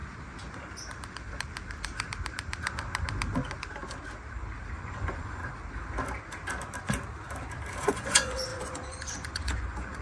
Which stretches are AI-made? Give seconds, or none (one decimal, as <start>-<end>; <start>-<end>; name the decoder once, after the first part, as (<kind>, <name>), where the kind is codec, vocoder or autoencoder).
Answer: 4.7-5.4 (vocoder, Vocos); 7.8-10.0

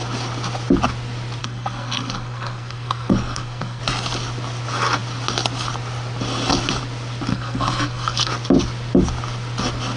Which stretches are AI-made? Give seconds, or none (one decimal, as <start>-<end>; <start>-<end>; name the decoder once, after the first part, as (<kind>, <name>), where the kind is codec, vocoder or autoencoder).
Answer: 1.4-3.8 (codec, SNAC); 7.3-8.3

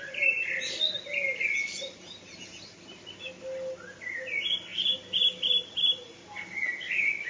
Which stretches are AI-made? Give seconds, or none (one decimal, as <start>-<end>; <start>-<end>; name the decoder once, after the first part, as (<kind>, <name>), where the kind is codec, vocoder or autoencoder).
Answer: none

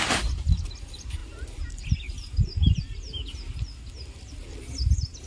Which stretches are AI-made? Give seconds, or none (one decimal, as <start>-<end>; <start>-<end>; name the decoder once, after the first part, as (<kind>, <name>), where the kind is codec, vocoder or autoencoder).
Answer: none

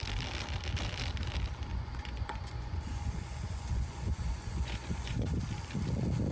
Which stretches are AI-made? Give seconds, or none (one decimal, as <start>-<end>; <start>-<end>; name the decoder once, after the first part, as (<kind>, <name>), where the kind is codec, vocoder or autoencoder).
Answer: 1.7-5.4 (vocoder, Vocos)